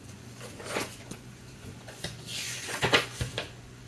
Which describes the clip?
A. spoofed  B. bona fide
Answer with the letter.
A